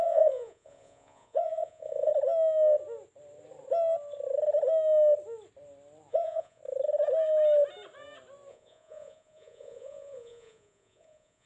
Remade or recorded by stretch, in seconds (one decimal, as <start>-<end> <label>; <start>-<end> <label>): 0.0-2.1 remade; 2.1-6.1 recorded; 6.1-6.6 remade; 6.6-8.5 recorded; 8.5-11.5 remade